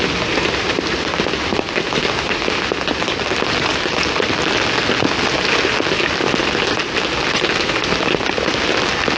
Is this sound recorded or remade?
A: recorded